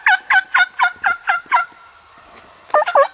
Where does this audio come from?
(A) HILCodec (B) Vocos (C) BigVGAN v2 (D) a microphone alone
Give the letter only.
D